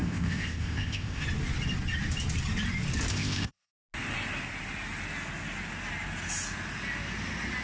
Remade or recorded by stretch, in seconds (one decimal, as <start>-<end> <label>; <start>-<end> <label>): 0.0-1.2 remade; 1.2-3.1 recorded; 3.1-3.7 remade; 3.7-7.6 recorded